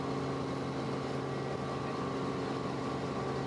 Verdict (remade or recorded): recorded